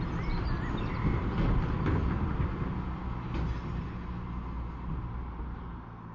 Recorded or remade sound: recorded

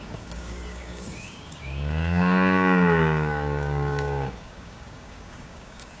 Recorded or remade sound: remade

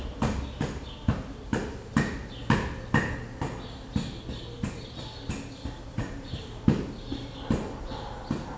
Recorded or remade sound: recorded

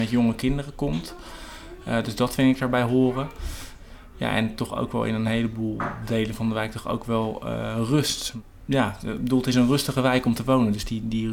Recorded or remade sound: recorded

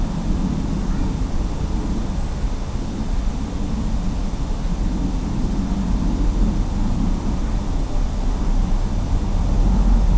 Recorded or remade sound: recorded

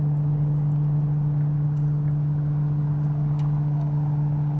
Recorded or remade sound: recorded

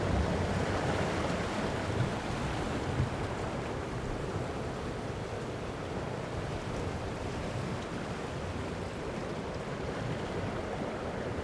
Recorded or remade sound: remade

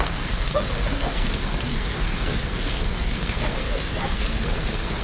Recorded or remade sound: remade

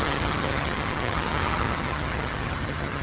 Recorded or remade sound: remade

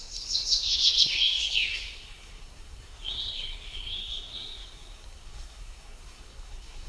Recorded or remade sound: remade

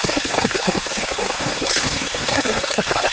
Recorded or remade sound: remade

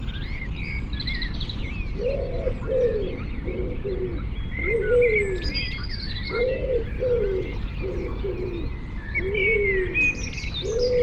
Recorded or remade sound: recorded